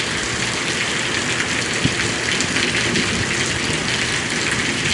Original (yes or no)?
yes